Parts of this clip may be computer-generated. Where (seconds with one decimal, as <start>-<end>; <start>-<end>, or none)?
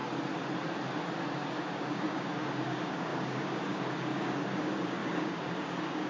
1.5-6.1